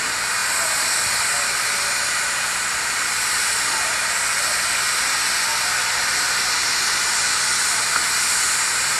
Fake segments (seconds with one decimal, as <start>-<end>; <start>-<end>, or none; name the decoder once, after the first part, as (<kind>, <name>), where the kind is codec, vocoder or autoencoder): none